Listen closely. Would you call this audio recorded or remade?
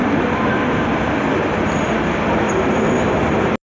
recorded